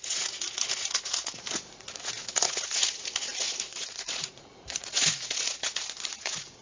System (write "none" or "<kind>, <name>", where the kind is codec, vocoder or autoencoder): vocoder, Vocos